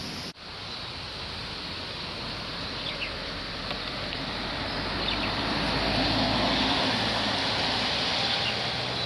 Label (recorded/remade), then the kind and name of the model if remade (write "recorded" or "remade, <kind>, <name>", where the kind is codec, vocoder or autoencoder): recorded